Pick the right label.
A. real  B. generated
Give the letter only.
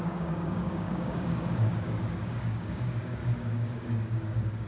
B